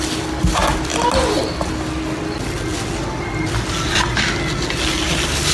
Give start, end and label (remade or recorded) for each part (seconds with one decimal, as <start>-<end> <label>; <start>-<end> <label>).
0.0-5.5 recorded